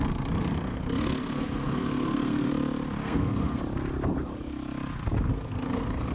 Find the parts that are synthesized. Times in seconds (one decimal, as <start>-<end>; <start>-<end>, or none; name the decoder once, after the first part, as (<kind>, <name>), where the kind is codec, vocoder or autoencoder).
0.7-2.5 (codec, SNAC); 3.0-3.6; 5.3-6.1